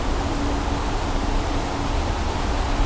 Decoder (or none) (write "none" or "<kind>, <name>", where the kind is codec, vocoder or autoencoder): none